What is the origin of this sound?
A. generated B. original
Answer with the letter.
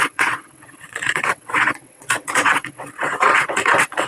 A